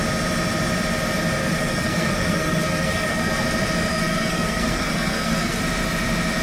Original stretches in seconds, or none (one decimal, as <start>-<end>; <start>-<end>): 0.0-1.4; 3.3-3.9; 5.6-6.4